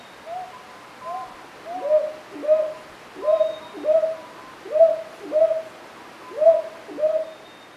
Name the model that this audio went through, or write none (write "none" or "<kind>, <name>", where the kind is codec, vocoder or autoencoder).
none